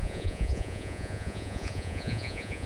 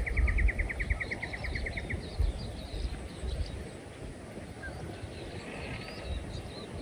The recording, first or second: second